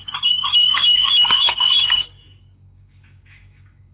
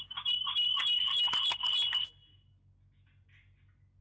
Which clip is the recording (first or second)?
second